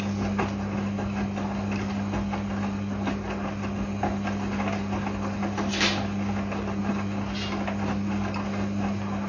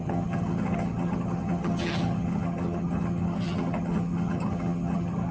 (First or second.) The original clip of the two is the first